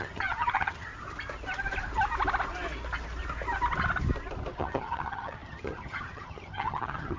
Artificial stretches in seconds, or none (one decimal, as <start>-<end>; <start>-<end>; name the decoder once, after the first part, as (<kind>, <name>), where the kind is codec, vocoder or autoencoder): 0.0-0.9 (vocoder, HiFi-GAN); 4.6-7.2